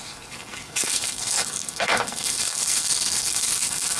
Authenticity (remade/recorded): remade